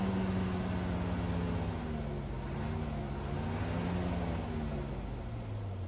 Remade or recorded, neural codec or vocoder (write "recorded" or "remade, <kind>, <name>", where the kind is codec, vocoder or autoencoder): recorded